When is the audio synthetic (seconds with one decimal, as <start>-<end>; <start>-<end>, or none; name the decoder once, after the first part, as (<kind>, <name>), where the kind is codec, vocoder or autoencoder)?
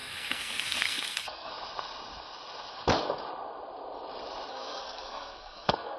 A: 0.0-1.5 (codec, SNAC); 4.5-6.0